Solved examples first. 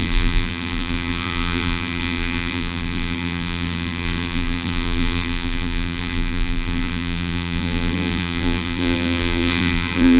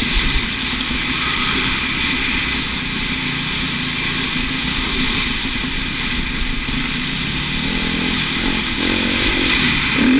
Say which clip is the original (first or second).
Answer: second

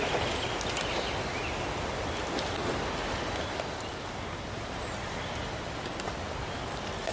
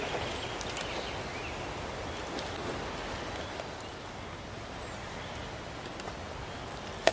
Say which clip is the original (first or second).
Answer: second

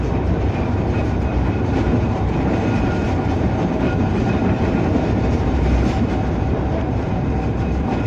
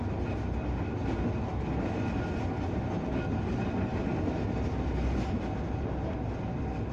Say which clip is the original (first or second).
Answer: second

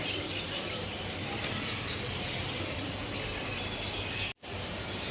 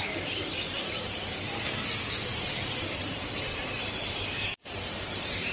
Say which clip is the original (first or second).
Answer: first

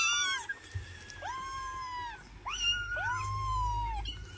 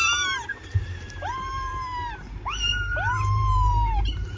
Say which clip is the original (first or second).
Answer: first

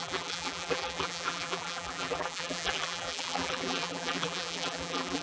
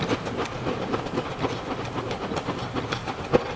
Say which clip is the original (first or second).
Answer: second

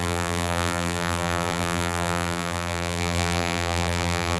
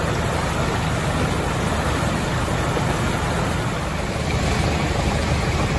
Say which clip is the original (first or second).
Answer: second